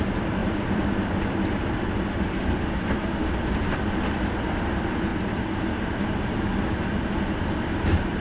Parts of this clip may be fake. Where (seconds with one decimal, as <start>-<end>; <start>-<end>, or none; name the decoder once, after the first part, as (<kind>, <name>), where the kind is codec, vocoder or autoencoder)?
0.0-5.1 (vocoder, BigVGAN v2); 5.6-8.2